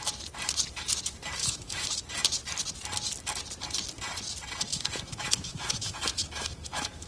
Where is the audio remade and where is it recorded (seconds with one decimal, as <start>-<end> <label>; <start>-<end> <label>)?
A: 0.0-1.4 recorded; 1.4-1.9 remade; 1.9-4.7 recorded; 4.7-7.1 remade